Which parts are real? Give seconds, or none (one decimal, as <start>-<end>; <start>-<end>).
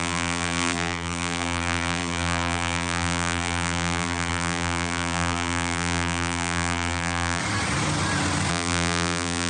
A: 7.4-8.5